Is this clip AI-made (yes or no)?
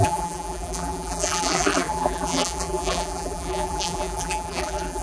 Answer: yes